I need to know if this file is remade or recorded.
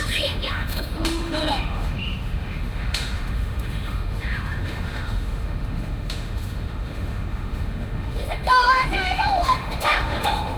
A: remade